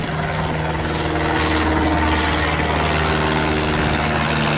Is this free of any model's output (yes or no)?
yes